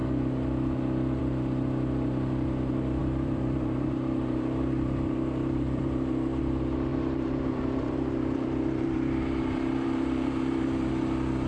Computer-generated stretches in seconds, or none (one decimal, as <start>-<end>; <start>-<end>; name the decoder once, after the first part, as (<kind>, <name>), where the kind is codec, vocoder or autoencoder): 3.0-6.4 (vocoder, BigVGAN v2); 6.9-10.9

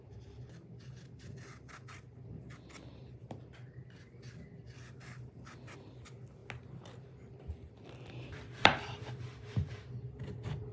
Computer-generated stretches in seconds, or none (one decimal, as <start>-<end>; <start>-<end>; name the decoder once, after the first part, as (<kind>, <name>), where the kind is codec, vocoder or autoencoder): none

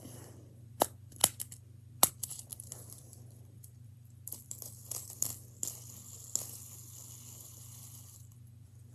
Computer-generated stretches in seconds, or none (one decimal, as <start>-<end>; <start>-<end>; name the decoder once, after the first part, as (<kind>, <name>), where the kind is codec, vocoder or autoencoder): 0.0-1.2 (vocoder, BigVGAN v2); 2.1-5.3; 7.4-8.9